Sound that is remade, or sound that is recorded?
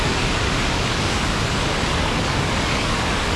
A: remade